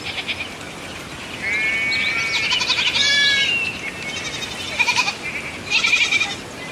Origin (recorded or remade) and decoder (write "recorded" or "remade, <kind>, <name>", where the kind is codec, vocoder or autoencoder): recorded